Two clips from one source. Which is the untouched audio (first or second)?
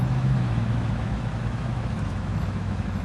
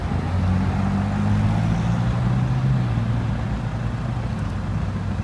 second